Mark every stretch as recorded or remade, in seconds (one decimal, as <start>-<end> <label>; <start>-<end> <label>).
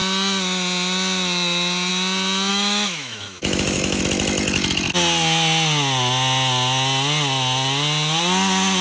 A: 0.0-2.5 recorded; 2.5-4.0 remade; 4.0-8.8 recorded